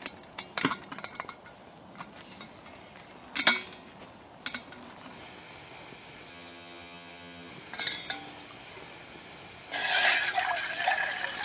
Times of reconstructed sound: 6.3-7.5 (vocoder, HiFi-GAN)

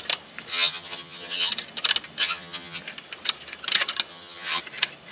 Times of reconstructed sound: 0.5-1.5 (vocoder, HiFi-GAN); 2.2-2.8; 4.1-4.6

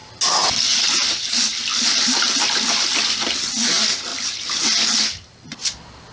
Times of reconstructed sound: none

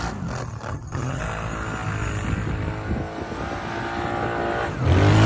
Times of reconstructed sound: 0.7-1.2 (vocoder, HiFi-GAN)

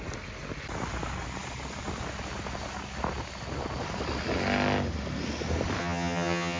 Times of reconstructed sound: 5.8-6.6 (vocoder, HiFi-GAN)

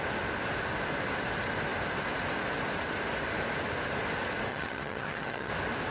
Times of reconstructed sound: 4.5-5.5 (vocoder, HiFi-GAN)